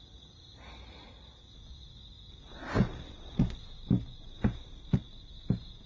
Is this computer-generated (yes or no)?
no